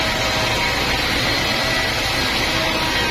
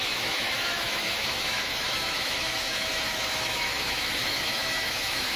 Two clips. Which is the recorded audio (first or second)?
first